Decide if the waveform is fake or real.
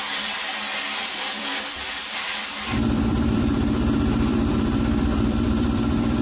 fake